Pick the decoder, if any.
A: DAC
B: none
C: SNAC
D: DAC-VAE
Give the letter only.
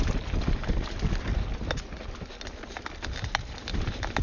B